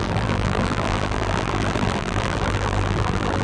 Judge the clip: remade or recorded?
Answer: remade